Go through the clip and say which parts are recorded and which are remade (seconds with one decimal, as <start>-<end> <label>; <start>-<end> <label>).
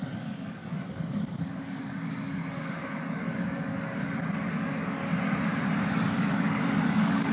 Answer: 0.0-5.0 remade; 5.0-5.8 recorded; 5.8-7.3 remade